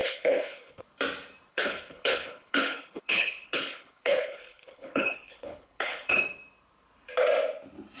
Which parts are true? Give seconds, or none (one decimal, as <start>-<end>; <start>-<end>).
0.8-1.5; 6.2-8.0